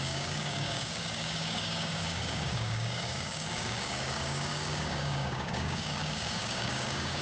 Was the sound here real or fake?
fake